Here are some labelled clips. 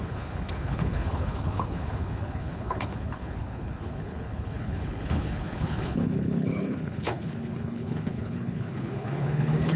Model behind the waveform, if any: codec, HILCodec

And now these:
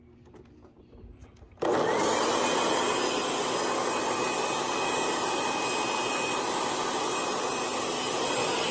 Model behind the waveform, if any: none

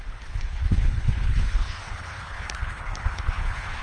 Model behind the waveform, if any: codec, HILCodec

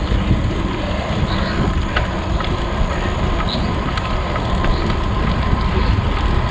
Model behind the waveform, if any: none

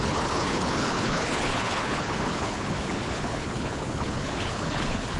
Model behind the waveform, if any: codec, HILCodec